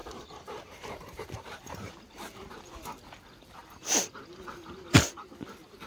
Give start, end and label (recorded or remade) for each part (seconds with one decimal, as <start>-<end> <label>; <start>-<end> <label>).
0.0-2.5 remade; 2.5-5.9 recorded